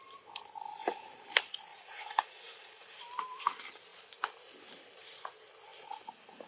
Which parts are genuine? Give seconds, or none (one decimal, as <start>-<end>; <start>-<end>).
0.0-1.7; 3.0-6.5